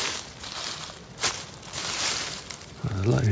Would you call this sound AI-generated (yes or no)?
no